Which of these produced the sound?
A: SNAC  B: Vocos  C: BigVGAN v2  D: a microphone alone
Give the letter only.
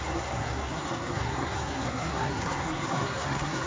A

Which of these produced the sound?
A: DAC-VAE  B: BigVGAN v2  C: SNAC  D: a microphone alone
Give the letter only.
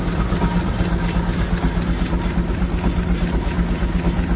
D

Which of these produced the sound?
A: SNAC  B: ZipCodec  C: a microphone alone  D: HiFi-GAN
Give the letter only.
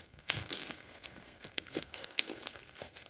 A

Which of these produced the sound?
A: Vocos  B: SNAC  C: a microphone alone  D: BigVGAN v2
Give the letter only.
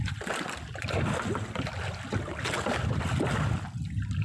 C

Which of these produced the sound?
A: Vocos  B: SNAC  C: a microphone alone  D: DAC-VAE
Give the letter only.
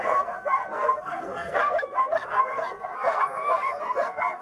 B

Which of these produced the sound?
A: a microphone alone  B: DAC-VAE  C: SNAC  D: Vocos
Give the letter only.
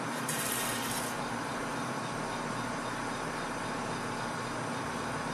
A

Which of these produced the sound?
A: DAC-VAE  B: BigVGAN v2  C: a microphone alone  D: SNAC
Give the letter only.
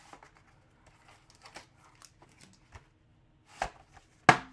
C